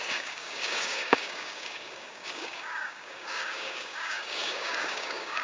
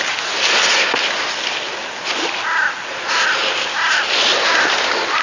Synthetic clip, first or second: first